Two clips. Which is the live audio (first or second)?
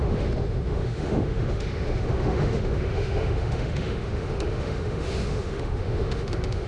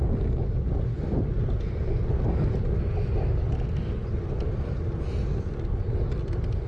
second